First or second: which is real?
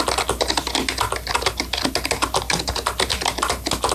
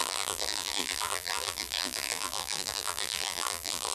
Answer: first